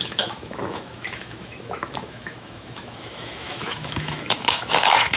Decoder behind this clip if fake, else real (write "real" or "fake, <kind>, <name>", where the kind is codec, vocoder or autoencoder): fake, autoencoder, DAC-VAE